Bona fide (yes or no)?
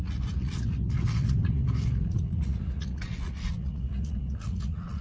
no